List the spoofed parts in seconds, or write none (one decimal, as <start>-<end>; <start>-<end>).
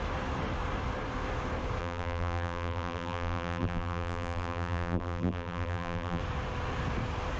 1.8-6.2